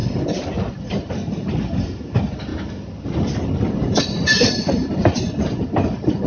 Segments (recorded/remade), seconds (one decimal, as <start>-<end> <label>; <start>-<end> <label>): 0.0-1.5 remade; 1.5-6.3 recorded